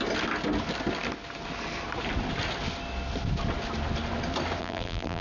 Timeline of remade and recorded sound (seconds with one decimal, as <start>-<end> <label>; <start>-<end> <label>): 0.0-4.6 recorded; 4.6-5.2 remade